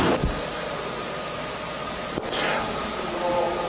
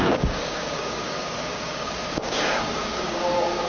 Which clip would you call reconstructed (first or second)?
second